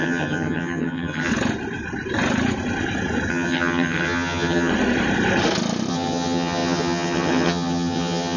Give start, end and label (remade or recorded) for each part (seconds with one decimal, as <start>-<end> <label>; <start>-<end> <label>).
0.0-1.3 remade; 1.3-3.3 recorded; 3.3-4.7 remade; 4.7-5.9 recorded; 5.9-8.4 remade